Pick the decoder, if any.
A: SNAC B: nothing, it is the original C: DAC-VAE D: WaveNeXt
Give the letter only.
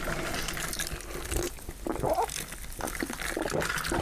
B